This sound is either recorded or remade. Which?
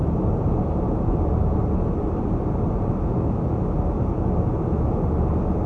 recorded